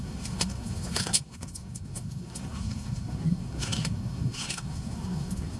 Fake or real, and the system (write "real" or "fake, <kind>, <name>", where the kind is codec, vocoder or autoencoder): fake, codec, SNAC